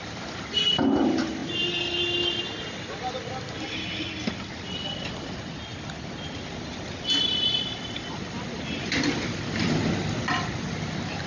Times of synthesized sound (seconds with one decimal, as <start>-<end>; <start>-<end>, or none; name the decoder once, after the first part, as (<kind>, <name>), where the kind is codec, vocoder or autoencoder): none

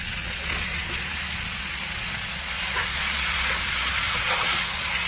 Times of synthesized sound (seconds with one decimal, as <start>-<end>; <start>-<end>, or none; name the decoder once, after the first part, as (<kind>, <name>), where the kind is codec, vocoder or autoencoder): 0.0-5.1 (vocoder, Vocos)

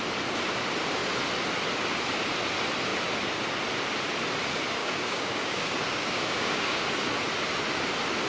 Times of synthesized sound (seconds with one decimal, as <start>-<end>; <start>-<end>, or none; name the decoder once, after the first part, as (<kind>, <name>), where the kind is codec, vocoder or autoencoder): 4.8-6.9 (codec, DAC)

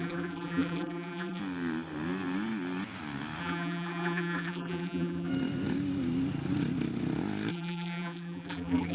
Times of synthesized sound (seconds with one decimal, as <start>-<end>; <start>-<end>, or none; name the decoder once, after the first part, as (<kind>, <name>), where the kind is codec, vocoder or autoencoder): 0.0-1.4 (vocoder, BigVGAN v2); 3.4-5.3; 7.5-8.9

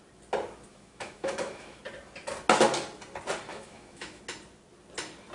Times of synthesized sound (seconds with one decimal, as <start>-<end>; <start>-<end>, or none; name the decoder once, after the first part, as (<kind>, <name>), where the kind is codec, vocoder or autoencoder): 0.7-1.8 (autoencoder, DAC-VAE); 3.5-4.2

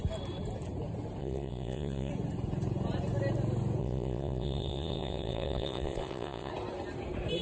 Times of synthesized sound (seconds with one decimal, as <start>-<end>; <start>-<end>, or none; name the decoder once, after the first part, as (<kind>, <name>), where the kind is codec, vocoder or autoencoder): 1.2-2.1 (vocoder, WaveNeXt); 3.8-6.5

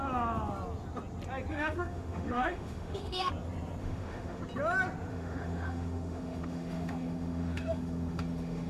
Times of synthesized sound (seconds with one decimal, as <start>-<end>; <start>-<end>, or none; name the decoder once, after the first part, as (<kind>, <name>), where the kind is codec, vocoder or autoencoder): 1.5-3.3 (autoencoder, DAC-VAE); 3.8-4.4; 5.1-8.7